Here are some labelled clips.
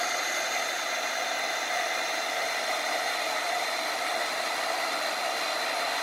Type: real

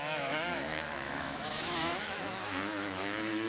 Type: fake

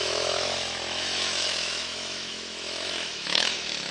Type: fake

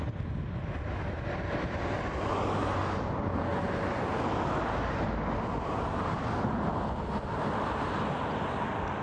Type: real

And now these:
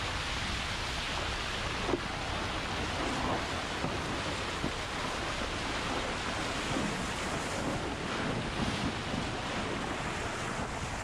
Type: real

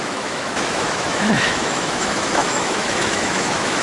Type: fake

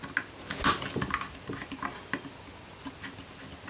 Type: real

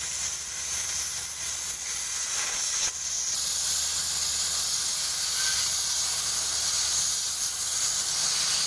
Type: real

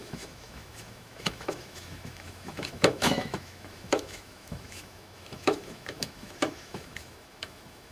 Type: fake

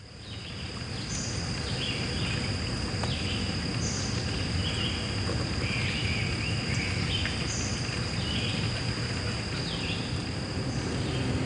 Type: real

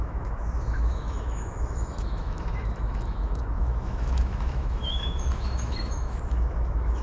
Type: fake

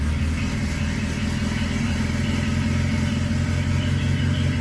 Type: real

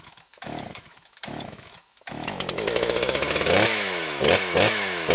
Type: fake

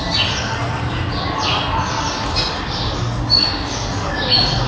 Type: real